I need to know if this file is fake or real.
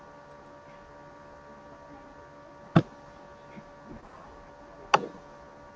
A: real